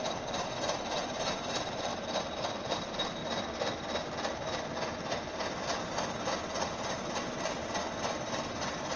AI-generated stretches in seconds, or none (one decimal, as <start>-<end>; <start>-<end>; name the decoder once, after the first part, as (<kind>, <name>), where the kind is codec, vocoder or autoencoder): 0.0-1.9 (vocoder, BigVGAN v2); 2.6-3.2; 6.9-7.6